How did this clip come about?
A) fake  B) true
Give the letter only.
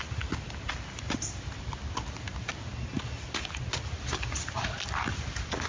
B